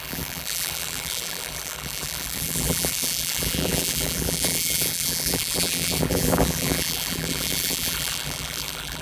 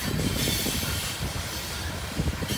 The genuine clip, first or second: second